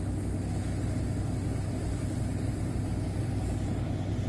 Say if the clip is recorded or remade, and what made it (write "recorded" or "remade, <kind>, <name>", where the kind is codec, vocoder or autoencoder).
recorded